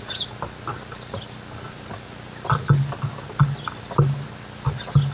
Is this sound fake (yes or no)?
no